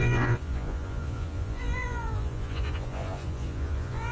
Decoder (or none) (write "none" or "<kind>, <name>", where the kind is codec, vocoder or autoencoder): vocoder, Vocos